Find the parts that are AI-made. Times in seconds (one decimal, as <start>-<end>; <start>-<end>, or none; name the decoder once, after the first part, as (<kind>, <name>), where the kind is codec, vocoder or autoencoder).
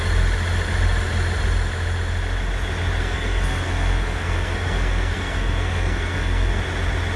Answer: 3.0-6.6 (codec, SNAC)